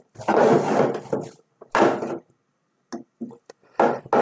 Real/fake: real